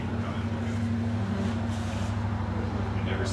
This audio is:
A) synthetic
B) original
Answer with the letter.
B